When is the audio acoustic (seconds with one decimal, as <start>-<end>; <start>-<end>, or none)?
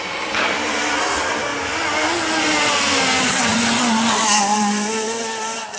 none